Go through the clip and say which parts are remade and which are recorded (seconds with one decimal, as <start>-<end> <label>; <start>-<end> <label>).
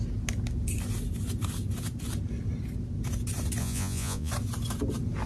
0.0-3.6 recorded; 3.6-4.3 remade; 4.3-5.3 recorded